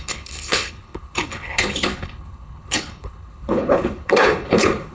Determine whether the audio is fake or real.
fake